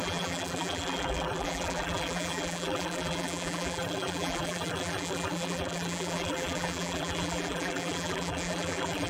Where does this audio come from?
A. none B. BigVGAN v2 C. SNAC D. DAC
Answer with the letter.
B